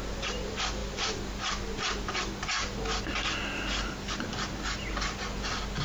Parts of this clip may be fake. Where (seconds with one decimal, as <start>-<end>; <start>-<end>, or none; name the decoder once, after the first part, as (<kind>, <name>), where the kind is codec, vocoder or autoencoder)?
none